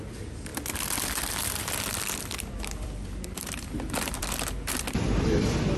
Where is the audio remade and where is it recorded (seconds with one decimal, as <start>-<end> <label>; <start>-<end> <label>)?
0.0-5.8 remade